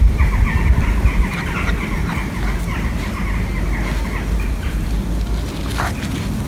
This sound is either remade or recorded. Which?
recorded